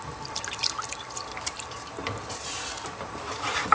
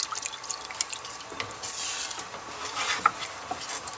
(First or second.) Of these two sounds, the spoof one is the first